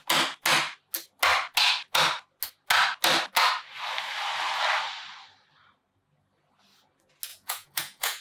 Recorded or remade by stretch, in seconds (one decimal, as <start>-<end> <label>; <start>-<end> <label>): 0.0-7.3 recorded; 7.3-8.2 remade